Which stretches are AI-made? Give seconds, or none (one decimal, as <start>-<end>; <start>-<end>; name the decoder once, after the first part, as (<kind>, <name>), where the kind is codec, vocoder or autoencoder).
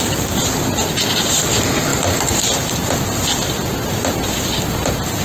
none